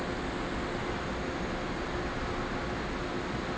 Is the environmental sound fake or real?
real